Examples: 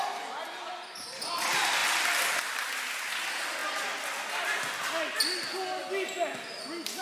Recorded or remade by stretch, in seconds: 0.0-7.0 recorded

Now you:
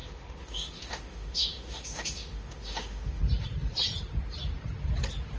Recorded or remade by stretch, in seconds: 0.0-3.2 remade; 3.2-5.4 recorded